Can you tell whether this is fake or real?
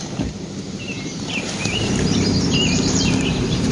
fake